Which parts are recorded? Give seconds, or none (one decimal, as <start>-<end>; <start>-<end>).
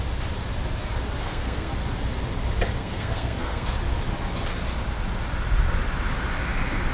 0.0-1.2; 1.7-2.8; 3.7-6.9